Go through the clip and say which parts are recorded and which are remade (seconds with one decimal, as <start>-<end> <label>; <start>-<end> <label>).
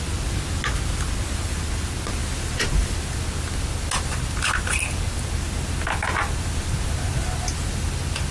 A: 0.0-8.3 recorded